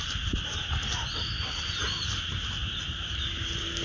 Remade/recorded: recorded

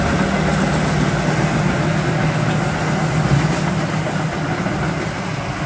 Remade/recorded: recorded